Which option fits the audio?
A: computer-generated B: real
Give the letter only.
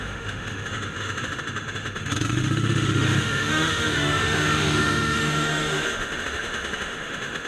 A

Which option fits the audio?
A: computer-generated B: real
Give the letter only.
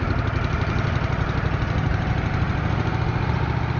B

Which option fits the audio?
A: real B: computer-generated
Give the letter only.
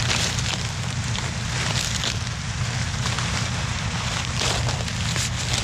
A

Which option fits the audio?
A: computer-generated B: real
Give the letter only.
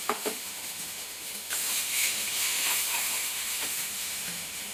A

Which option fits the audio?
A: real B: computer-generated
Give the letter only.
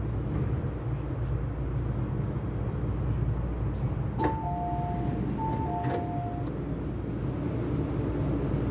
A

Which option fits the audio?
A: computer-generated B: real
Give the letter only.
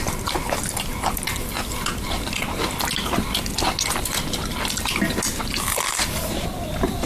B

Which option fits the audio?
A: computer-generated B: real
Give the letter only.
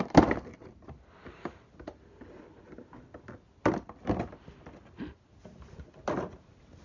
B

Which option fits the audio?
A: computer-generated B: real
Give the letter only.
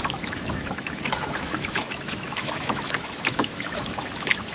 A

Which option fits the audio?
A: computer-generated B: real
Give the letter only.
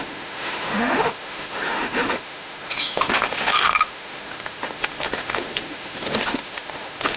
A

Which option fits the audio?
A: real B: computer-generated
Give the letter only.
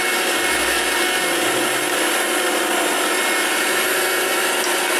A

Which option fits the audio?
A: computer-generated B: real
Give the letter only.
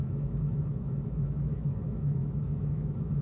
A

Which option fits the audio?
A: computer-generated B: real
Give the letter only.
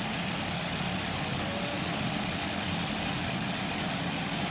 B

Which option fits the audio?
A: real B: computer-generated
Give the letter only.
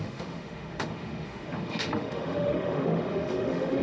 B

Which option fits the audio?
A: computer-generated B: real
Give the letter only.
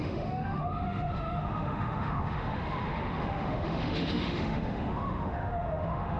A